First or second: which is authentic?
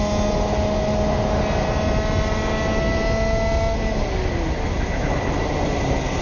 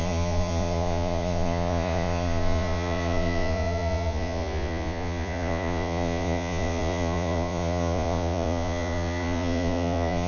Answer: first